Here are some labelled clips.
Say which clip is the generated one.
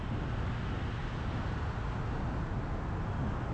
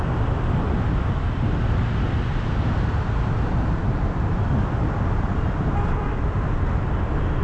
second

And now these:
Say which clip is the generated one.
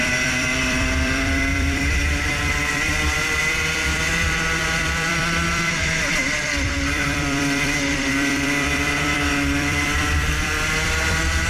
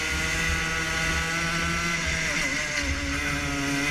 first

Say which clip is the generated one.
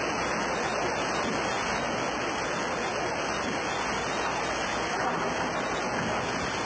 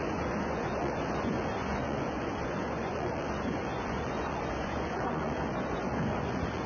second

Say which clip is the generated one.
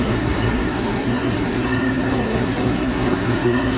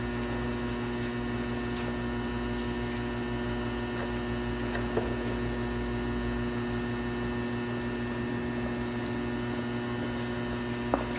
first